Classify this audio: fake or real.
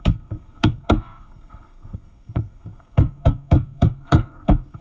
fake